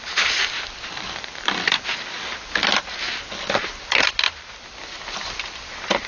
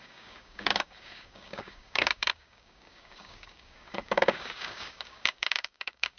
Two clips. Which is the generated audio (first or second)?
second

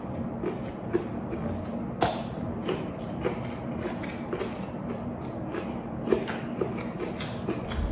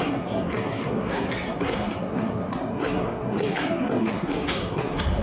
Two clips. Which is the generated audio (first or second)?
second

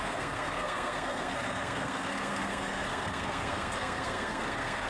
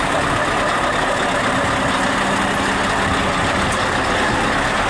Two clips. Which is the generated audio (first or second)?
first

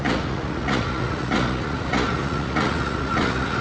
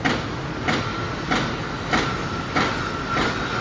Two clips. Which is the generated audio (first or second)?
first